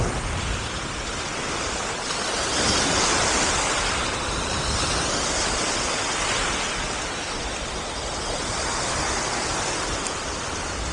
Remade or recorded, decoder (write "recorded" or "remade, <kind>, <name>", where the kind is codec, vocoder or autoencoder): recorded